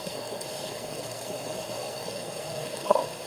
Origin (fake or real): fake